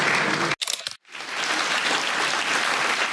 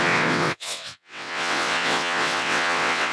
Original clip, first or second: first